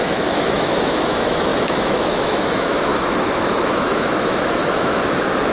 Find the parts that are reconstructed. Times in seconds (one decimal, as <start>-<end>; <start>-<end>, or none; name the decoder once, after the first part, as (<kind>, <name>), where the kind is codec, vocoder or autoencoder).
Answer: 0.0-5.5 (autoencoder, DAC-VAE)